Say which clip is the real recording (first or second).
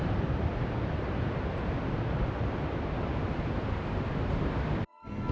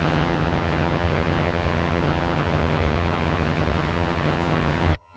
first